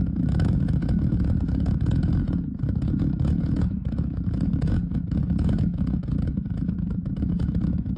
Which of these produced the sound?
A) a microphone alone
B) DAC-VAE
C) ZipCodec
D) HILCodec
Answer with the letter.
B